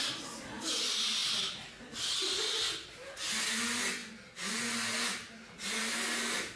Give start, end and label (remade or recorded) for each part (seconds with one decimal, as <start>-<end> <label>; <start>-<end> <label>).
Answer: 0.0-6.6 recorded